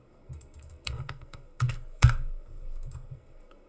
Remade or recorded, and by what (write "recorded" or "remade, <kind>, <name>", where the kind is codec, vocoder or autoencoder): remade, codec, SNAC